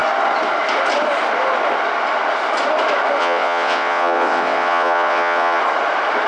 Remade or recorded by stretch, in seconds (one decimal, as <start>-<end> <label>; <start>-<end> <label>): 0.0-3.2 recorded; 3.2-5.6 remade; 5.6-6.3 recorded